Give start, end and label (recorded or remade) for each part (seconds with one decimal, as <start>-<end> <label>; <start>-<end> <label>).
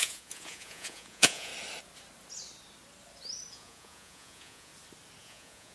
0.0-1.5 remade; 1.5-3.5 recorded; 3.5-4.7 remade; 4.7-5.2 recorded; 5.2-5.7 remade